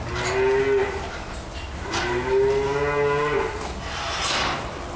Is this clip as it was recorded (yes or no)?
yes